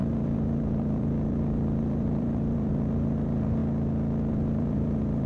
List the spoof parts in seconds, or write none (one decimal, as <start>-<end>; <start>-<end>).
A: 0.0-3.6; 4.3-5.3